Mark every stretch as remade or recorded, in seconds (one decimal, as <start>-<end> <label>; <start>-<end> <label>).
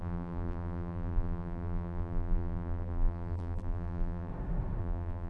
0.0-4.3 remade; 4.3-4.8 recorded; 4.8-5.3 remade